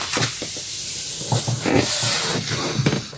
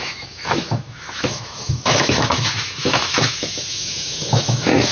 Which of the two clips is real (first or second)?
first